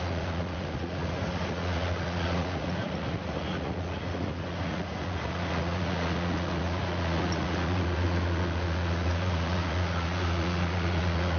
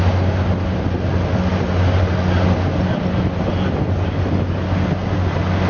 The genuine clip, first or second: second